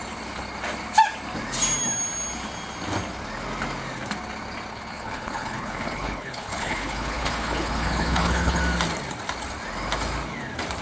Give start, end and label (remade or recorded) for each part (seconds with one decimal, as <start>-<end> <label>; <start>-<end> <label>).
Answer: 0.0-4.7 recorded; 4.7-8.6 remade; 8.6-10.8 recorded